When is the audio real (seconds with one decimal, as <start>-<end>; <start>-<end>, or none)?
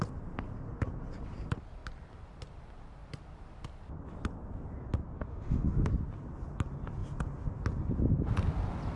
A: 0.0-5.3; 5.9-9.0